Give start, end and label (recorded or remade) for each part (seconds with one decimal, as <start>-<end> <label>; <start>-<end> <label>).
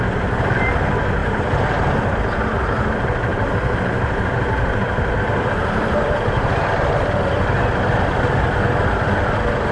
0.0-1.2 recorded; 1.2-2.1 remade; 2.1-3.3 recorded; 3.3-7.1 remade; 7.1-9.7 recorded